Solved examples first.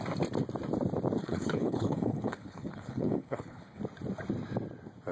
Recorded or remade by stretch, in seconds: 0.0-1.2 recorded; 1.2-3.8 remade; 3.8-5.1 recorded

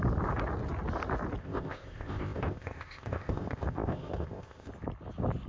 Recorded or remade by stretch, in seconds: 0.0-1.4 recorded; 1.4-4.7 remade; 4.7-5.5 recorded

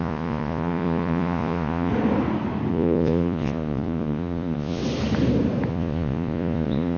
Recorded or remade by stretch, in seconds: 0.0-1.9 remade; 1.9-2.7 recorded; 2.7-4.8 remade; 4.8-5.7 recorded; 5.7-7.0 remade

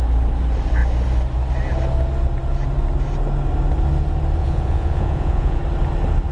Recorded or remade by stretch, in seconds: 0.0-4.4 recorded; 4.4-5.6 remade; 5.6-6.3 recorded

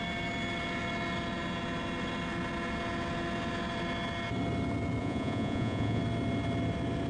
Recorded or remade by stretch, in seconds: 0.0-5.0 recorded; 5.0-6.0 remade; 6.0-7.1 recorded

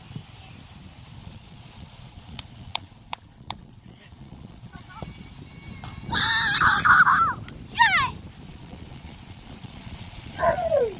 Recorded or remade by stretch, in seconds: 0.0-1.2 recorded; 1.2-4.9 remade; 4.9-8.5 recorded; 8.5-11.0 remade